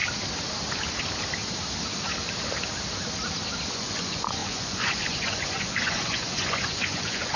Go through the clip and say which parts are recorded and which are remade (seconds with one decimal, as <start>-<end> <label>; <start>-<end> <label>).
0.0-3.7 recorded; 3.7-7.4 remade